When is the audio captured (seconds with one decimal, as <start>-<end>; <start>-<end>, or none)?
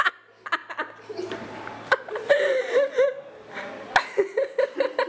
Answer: 0.0-0.6; 3.7-5.1